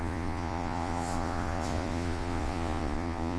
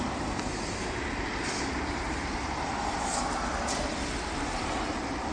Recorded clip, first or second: second